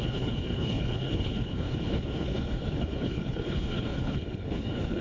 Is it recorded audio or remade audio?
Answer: remade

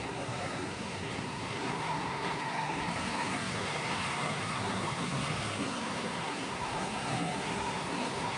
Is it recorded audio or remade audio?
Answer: remade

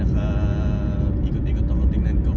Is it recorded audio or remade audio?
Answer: recorded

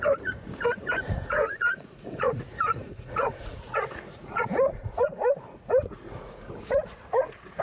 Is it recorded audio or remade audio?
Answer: remade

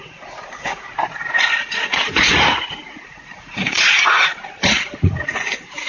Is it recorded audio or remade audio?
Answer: remade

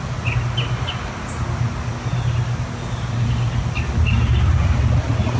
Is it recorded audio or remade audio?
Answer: recorded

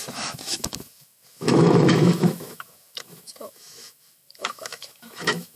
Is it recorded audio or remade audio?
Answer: remade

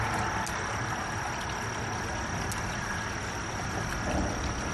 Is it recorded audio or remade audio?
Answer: recorded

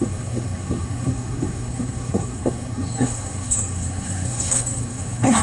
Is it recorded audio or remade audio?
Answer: remade